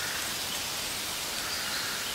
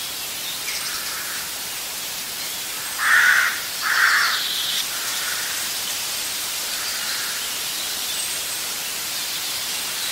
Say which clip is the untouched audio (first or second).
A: first